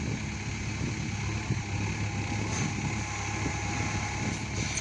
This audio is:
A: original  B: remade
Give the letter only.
A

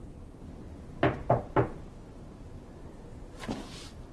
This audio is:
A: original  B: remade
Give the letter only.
A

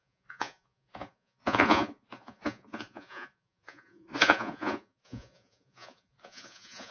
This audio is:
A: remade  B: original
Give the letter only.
A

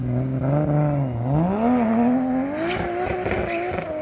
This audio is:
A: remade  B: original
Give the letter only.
B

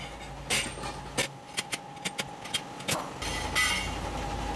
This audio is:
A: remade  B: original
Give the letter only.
B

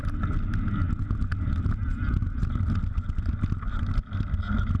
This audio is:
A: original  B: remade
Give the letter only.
A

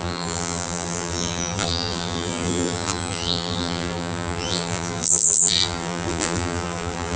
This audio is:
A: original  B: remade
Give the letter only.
B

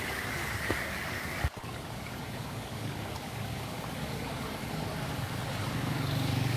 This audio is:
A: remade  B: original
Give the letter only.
A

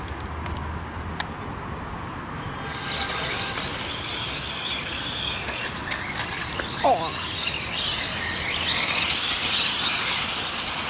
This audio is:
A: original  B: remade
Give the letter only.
A